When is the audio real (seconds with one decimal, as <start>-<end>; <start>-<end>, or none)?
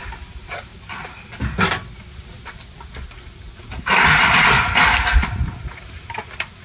0.0-6.6